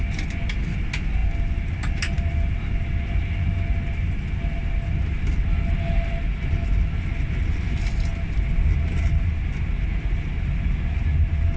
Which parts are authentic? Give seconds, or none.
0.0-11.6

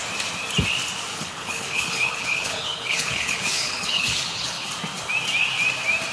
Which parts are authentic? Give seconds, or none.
0.0-1.1; 4.7-6.1

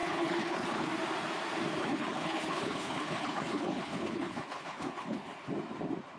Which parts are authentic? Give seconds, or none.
0.9-1.8; 5.5-6.2

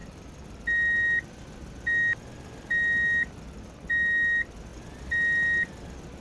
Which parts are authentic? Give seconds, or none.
0.0-6.2